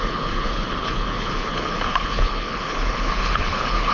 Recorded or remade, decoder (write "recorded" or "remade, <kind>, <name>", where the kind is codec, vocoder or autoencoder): remade, codec, HILCodec